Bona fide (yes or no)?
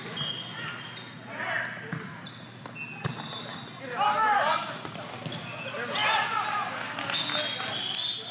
yes